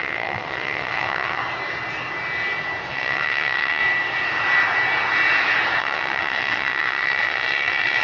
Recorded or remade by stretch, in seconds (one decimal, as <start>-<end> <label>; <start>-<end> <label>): 0.0-1.4 remade; 1.4-2.9 recorded; 2.9-3.8 remade; 3.8-5.8 recorded; 5.8-8.0 remade